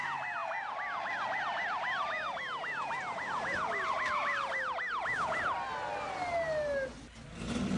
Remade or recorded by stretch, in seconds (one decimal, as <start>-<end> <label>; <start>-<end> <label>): 0.0-7.8 recorded